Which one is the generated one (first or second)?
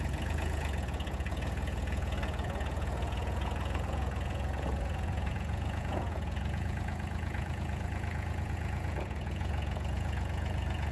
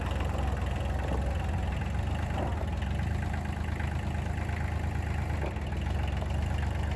first